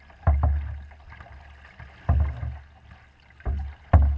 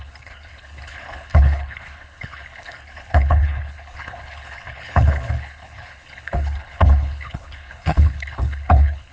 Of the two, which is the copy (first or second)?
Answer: second